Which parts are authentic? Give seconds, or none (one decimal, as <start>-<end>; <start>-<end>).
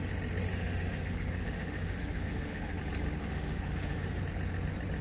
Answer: 0.0-0.5; 2.8-3.2; 4.2-5.0